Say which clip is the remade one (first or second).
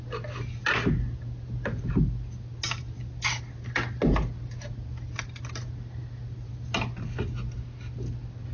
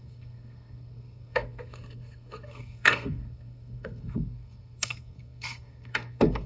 second